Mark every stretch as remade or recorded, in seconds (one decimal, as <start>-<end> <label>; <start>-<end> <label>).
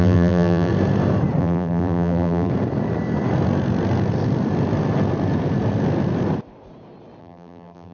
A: 0.0-0.7 remade; 0.7-1.4 recorded; 1.4-2.5 remade; 2.5-7.2 recorded; 7.2-7.9 remade